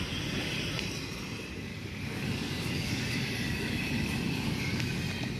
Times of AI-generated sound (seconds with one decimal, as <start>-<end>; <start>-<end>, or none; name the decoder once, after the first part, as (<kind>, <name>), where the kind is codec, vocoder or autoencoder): 1.7-4.9 (codec, DAC)